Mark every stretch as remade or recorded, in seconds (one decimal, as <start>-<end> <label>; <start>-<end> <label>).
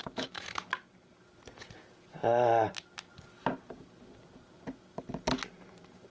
0.0-0.6 remade; 0.6-6.1 recorded